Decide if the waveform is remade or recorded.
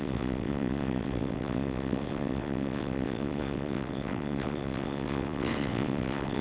remade